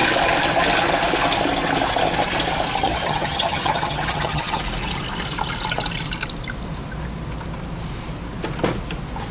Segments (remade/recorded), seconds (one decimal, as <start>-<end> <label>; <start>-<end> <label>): 0.0-2.8 recorded; 2.8-4.6 remade; 4.6-9.3 recorded